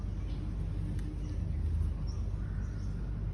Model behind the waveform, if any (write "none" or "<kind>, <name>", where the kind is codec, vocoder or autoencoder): none